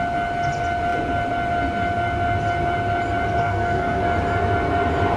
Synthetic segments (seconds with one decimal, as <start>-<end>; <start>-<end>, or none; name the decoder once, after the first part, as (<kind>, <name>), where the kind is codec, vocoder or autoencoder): 3.4-4.0 (codec, SNAC)